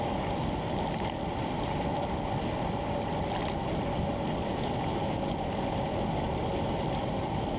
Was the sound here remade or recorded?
recorded